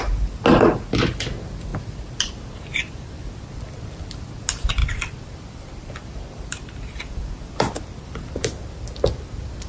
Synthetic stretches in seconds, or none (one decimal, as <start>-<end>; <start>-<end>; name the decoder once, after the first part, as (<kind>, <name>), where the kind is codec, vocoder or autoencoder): 1.7-4.2 (vocoder, BigVGAN v2); 4.8-8.7